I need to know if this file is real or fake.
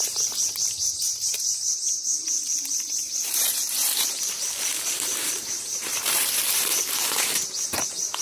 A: fake